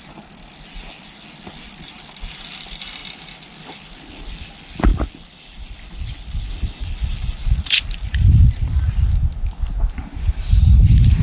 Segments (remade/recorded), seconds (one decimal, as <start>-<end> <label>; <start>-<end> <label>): 0.0-3.0 remade; 3.0-4.1 recorded; 4.1-11.2 remade